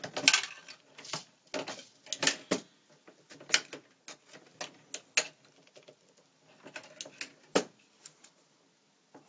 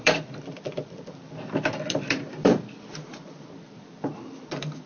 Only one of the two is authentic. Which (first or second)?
first